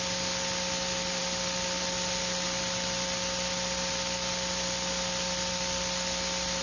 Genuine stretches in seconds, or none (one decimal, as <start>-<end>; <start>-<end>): 0.0-6.6